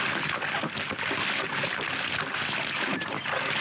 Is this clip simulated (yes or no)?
no